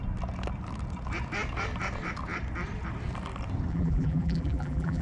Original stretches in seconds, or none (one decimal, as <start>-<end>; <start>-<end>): 0.0-3.7